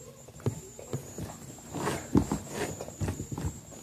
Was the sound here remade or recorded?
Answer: recorded